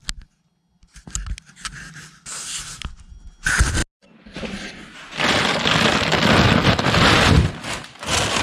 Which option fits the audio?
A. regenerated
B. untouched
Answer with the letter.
B